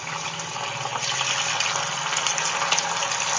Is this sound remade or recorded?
recorded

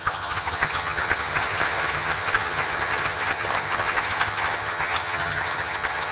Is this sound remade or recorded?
remade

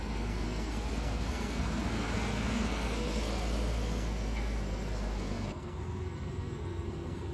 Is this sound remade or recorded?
remade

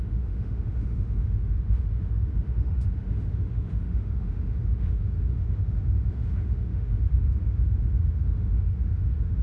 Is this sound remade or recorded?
remade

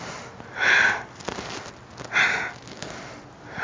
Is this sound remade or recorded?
recorded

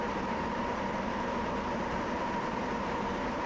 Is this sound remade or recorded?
remade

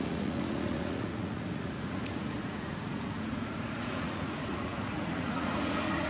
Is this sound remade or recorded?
remade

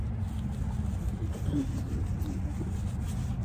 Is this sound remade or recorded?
recorded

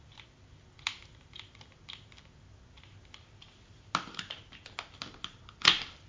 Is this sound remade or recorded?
recorded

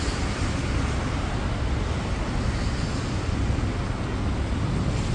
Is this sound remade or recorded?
recorded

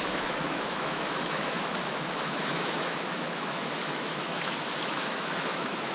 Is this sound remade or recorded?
remade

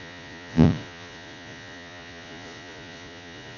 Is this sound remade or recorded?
remade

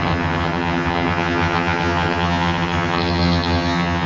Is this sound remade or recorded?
remade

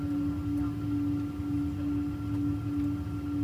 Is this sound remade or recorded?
recorded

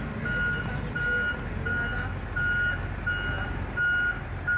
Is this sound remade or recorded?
recorded